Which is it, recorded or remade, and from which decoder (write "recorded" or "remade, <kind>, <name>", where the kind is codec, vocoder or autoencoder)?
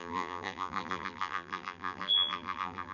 remade, vocoder, BigVGAN v2